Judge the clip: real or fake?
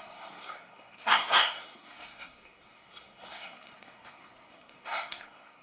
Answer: fake